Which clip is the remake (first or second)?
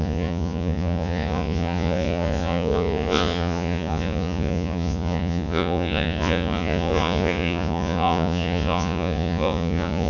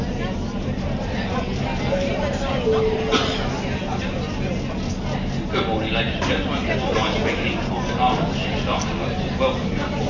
first